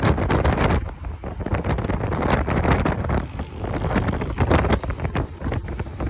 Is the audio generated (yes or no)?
yes